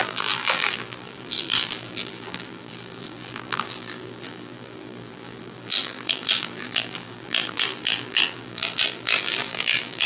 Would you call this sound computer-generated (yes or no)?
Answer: yes